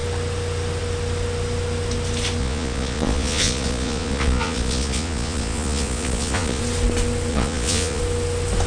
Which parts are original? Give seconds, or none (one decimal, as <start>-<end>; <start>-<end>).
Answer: 0.0-2.4; 6.6-7.3; 8.0-8.7